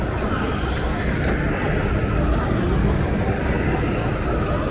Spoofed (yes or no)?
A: no